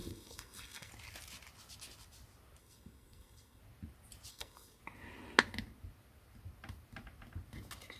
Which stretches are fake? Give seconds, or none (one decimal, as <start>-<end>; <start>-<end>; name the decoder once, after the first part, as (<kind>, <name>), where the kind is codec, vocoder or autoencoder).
0.0-0.9 (codec, SNAC); 2.6-3.6; 4.3-4.8